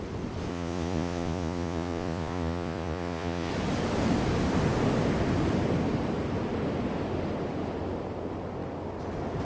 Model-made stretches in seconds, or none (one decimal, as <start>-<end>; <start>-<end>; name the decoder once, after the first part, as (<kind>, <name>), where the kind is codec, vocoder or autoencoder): 0.5-3.5 (vocoder, Vocos)